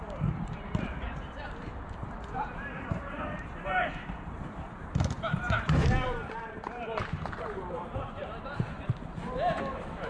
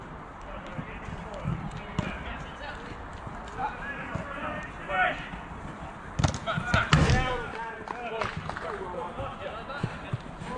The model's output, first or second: first